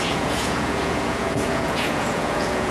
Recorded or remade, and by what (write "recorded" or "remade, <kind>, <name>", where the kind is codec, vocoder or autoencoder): remade, vocoder, Vocos